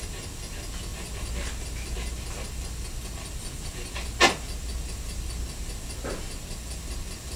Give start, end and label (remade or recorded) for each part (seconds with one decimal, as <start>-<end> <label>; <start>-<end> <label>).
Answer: 0.0-7.4 recorded